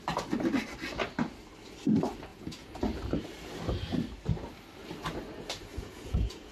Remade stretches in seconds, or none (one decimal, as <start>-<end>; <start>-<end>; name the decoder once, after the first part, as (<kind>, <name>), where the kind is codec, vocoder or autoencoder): 2.3-2.8 (vocoder, Vocos); 5.7-6.5